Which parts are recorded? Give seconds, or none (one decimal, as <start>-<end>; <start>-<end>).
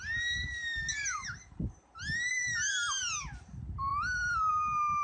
0.0-5.0